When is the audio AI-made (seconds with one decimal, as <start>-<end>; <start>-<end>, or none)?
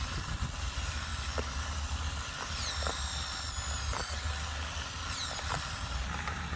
none